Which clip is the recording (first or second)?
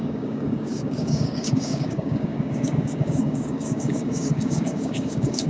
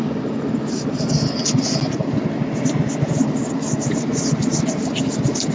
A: second